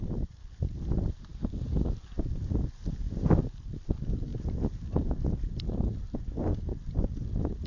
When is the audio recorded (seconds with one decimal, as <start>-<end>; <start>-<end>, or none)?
0.0-7.7